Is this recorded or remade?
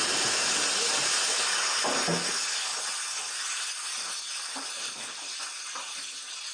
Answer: recorded